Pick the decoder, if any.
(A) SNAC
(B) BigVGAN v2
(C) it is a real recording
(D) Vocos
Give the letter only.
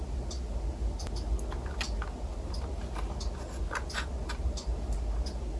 C